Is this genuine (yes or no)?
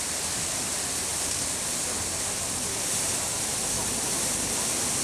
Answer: yes